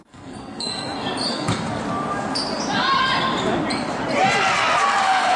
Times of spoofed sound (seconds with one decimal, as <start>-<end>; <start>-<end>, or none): 0.0-0.7; 1.3-1.8; 5.0-5.4